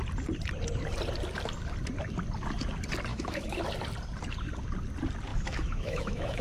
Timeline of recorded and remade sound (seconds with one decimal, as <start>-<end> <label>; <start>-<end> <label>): 0.0-3.1 recorded; 3.1-3.6 remade; 3.6-5.3 recorded; 5.3-6.4 remade